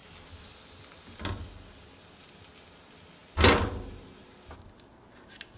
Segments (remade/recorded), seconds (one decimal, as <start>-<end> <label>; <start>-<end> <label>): 0.0-5.6 recorded